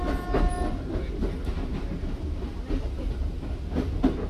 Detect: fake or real real